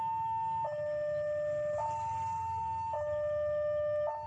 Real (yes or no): yes